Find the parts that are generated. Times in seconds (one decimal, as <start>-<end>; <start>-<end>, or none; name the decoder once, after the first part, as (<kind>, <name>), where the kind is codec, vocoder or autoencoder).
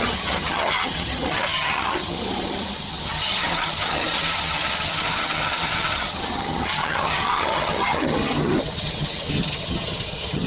0.0-10.5 (vocoder, HiFi-GAN)